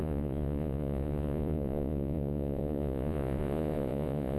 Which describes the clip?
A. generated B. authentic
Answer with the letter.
A